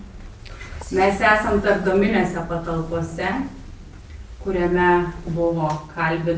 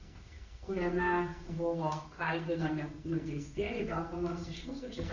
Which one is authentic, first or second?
first